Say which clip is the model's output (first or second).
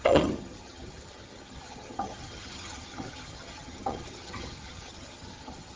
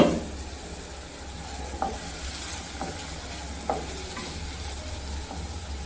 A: first